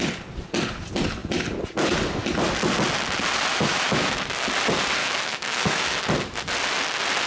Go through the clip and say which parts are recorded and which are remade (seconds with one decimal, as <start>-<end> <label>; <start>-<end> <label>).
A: 0.0-3.5 recorded; 3.5-4.2 remade; 4.2-5.0 recorded; 5.0-6.0 remade; 6.0-7.3 recorded